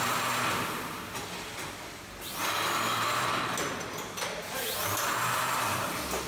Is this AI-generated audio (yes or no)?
no